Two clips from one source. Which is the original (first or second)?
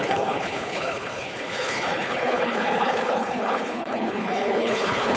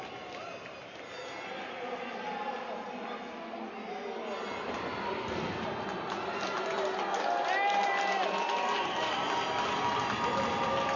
second